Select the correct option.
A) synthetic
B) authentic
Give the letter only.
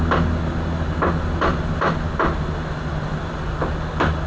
B